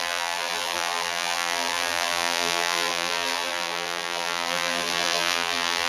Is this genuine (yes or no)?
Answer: no